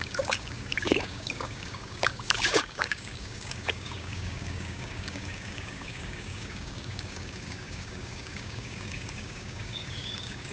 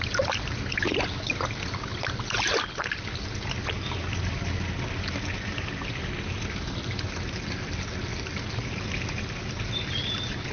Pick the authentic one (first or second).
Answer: second